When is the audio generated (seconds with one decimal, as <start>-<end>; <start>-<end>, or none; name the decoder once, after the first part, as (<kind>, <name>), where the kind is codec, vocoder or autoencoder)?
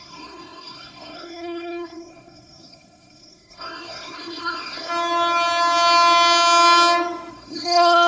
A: 0.0-4.9 (codec, SNAC); 7.3-8.1